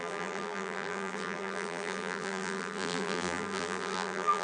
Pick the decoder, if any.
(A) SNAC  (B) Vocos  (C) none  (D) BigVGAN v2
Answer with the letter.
D